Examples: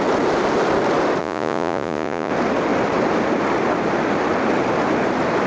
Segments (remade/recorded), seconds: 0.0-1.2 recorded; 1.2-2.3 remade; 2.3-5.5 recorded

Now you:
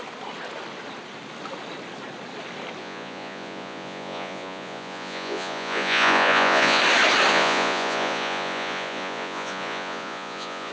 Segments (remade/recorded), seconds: 0.0-2.8 recorded; 2.8-6.8 remade; 6.8-7.3 recorded; 7.3-10.7 remade

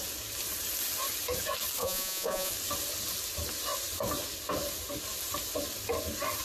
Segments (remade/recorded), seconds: 0.0-1.8 recorded; 1.8-2.5 remade; 2.5-6.4 recorded

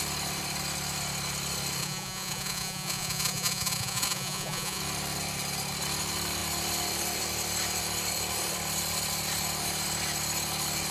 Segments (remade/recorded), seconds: 0.0-1.8 recorded; 1.8-4.8 remade; 4.8-10.9 recorded

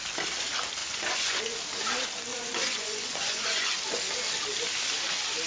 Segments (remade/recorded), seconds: 0.0-0.8 recorded; 0.8-1.4 remade; 1.4-2.3 recorded; 2.3-3.7 remade; 3.7-5.5 recorded

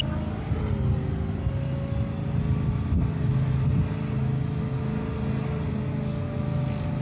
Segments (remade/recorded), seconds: 0.0-7.0 recorded

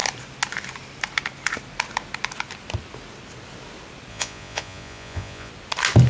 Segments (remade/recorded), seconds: 0.0-4.1 recorded; 4.1-5.5 remade; 5.5-6.1 recorded